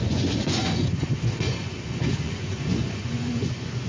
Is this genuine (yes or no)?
no